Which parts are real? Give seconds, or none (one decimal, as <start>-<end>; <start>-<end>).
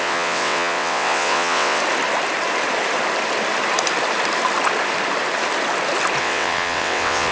1.8-6.2